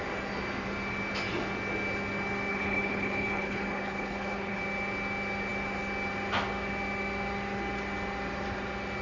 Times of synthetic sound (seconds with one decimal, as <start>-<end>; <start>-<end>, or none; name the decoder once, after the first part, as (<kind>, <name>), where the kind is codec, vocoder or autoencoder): 2.5-4.6 (codec, HILCodec)